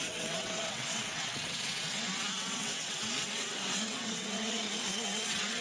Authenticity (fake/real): fake